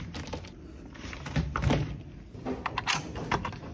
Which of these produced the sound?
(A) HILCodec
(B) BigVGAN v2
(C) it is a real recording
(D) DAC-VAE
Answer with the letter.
C